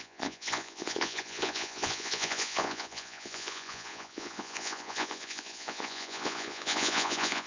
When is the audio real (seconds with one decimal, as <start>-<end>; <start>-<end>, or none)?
none